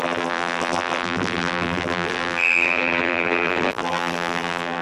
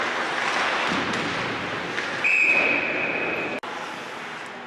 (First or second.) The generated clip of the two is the first